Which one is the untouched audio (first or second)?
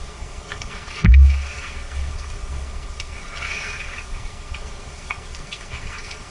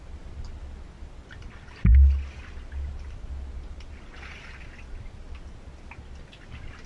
second